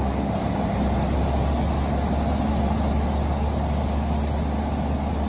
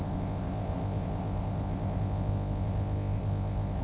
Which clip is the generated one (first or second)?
second